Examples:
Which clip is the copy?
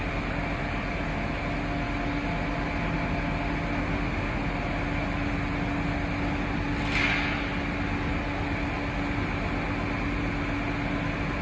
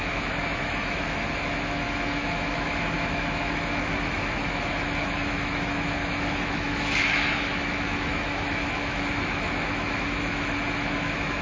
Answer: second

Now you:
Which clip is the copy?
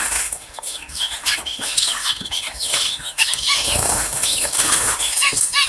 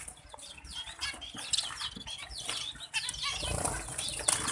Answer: first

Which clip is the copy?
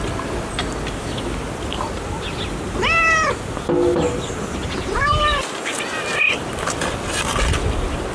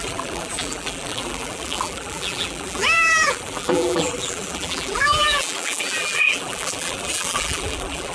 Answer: second